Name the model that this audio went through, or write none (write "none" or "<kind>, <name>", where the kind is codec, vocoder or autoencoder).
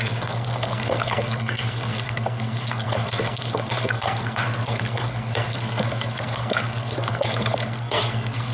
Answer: codec, SNAC